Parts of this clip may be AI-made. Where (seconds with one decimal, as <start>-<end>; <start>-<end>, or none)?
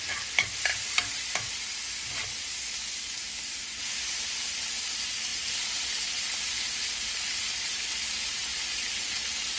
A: 0.7-1.6; 5.3-7.7; 8.5-9.6